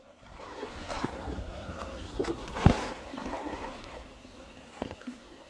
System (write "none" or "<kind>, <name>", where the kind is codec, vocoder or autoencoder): codec, SNAC